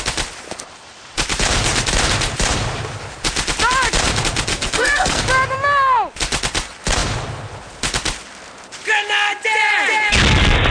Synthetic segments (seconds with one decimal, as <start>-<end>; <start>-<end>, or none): 4.5-5.2